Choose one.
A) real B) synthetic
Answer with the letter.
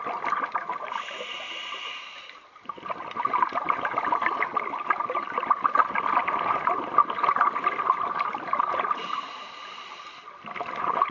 A